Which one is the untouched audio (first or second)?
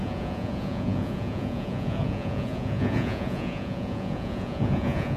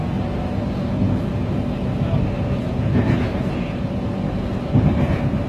second